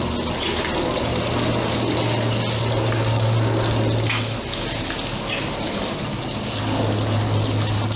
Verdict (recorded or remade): recorded